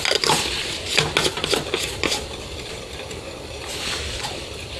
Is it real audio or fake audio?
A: real